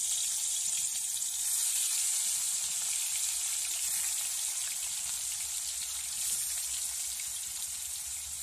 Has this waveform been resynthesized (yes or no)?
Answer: no